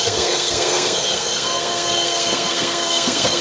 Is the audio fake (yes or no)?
yes